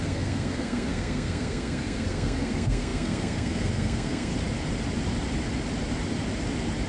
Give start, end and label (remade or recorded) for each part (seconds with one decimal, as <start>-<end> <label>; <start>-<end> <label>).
0.0-4.3 remade; 4.3-6.9 recorded